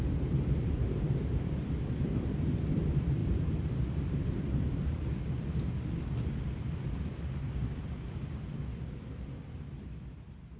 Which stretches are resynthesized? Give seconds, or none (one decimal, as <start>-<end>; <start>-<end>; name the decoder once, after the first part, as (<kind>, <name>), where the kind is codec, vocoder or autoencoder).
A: 0.0-1.3 (vocoder, BigVGAN v2); 3.2-5.2